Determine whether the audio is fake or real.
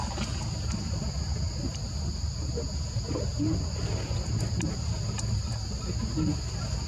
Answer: real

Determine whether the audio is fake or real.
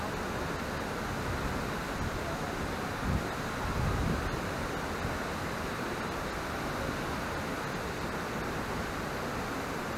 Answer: real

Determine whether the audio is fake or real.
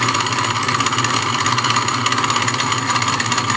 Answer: real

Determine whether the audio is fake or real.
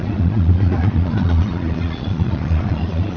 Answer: fake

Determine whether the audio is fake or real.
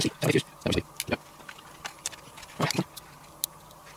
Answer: real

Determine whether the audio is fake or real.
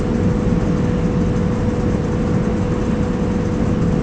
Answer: real